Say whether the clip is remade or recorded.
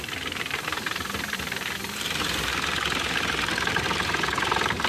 remade